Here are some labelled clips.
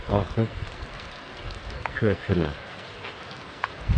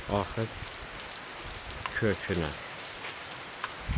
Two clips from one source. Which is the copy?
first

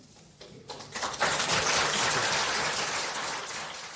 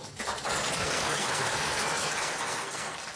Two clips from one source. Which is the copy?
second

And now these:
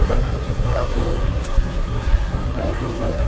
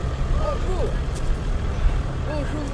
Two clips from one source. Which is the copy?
first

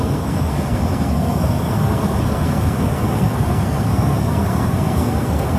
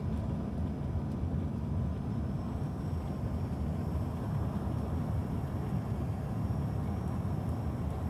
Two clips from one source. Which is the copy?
first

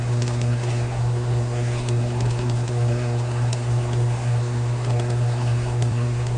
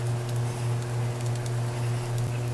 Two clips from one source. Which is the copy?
first